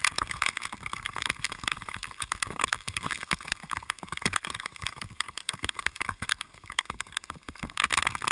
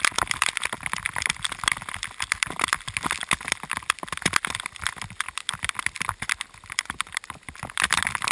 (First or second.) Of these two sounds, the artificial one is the first